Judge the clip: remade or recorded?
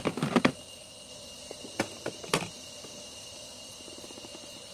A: recorded